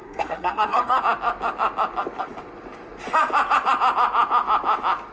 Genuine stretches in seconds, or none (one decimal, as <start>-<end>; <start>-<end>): 1.0-5.1